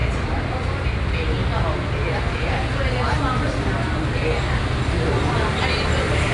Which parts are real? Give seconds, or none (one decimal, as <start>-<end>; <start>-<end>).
0.0-6.3